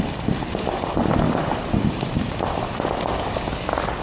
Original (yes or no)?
yes